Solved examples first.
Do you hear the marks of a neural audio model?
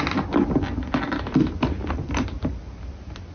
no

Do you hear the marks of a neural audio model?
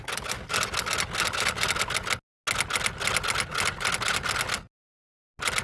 no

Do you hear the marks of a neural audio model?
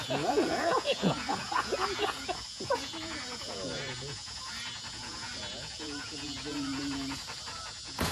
yes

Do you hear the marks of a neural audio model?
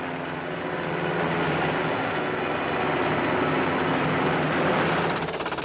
no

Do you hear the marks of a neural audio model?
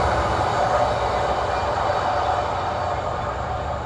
no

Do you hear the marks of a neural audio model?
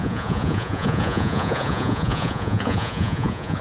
yes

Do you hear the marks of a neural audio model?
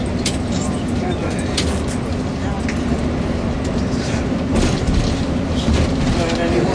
no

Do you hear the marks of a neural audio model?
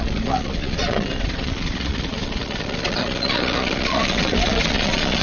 yes